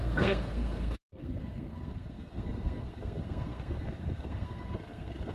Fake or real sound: fake